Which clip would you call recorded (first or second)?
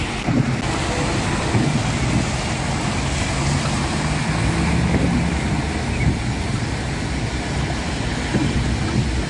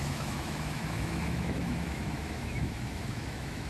first